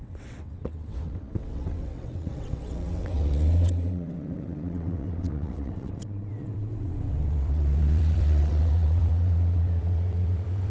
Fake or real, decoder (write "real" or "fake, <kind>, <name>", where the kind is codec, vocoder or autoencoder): fake, vocoder, WaveNeXt